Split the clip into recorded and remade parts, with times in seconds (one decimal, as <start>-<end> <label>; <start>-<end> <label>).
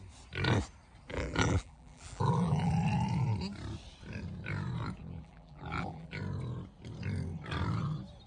0.0-1.1 recorded; 1.1-2.7 remade; 2.7-5.0 recorded; 5.0-6.2 remade; 6.2-8.3 recorded